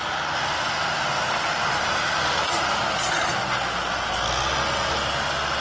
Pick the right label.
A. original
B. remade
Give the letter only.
A